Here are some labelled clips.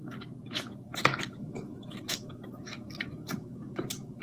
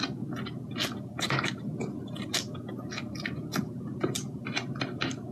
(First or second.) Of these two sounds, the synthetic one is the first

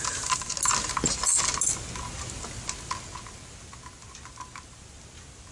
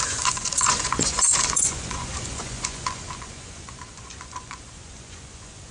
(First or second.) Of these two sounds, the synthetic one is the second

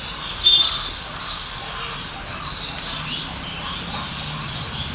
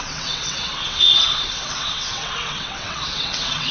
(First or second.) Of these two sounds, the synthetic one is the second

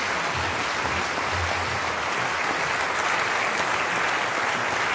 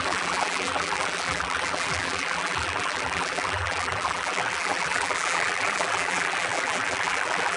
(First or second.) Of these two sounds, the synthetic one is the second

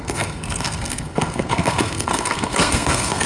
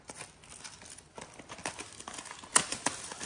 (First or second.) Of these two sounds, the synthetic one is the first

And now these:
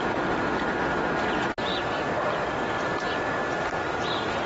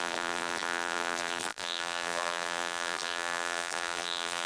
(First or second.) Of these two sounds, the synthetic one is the second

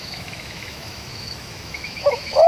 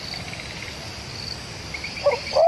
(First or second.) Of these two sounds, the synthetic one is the first